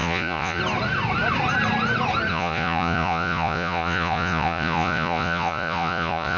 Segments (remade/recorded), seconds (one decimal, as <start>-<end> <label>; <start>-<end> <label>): 0.0-0.6 remade; 0.6-2.3 recorded; 2.3-6.4 remade